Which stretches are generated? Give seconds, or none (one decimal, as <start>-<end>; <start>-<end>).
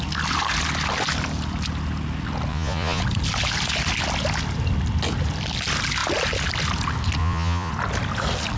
2.5-3.0; 7.2-7.7